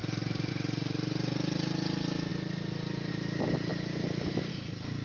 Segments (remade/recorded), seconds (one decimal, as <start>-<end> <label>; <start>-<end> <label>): 0.0-5.0 recorded